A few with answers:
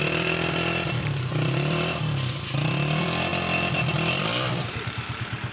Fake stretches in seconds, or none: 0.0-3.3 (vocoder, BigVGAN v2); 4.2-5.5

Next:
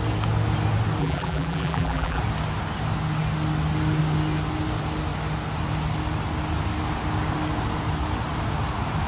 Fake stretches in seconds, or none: 1.0-2.2 (vocoder, BigVGAN v2)

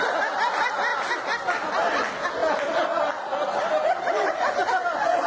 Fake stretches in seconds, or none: 2.4-4.4 (vocoder, BigVGAN v2)

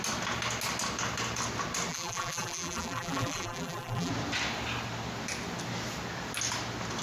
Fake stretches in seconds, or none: 1.9-4.1 (vocoder, BigVGAN v2)

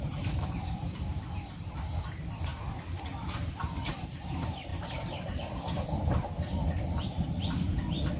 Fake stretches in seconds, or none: 0.0-8.2 (vocoder, BigVGAN v2)

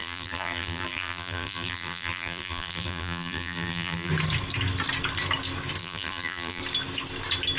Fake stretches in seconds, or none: 0.0-4.1 (vocoder, BigVGAN v2); 5.8-6.6